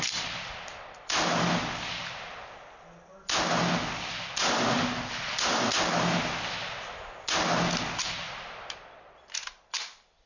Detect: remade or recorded recorded